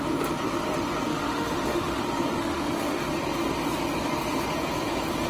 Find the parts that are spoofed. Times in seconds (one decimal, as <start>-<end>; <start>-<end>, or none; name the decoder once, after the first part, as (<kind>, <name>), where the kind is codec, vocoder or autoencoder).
1.1-2.0 (autoencoder, DAC-VAE); 2.4-3.1